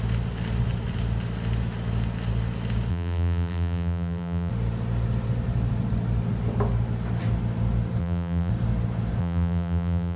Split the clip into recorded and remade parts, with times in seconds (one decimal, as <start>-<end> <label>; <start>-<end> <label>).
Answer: 0.0-2.9 recorded; 2.9-4.5 remade; 4.5-8.0 recorded; 8.0-8.5 remade; 8.5-9.2 recorded; 9.2-10.2 remade